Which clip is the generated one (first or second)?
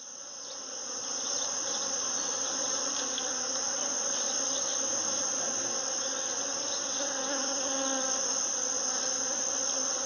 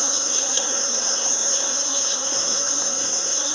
second